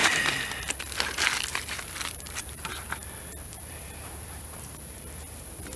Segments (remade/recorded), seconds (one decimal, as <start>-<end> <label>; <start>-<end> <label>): 0.0-2.1 recorded; 2.1-2.7 remade; 2.7-3.5 recorded; 3.5-5.8 remade